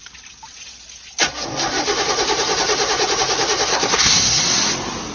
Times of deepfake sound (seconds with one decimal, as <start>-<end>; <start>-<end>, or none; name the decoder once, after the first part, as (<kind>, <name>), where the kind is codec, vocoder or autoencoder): 3.7-4.4 (codec, SNAC)